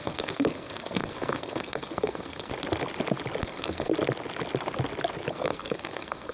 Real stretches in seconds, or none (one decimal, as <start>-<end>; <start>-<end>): 2.5-3.4; 3.9-5.3